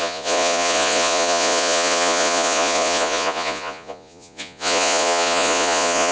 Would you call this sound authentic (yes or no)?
no